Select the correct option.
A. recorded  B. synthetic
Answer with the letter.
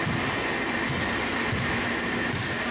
A